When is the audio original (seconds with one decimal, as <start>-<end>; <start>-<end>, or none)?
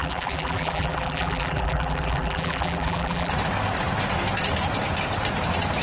3.3-5.8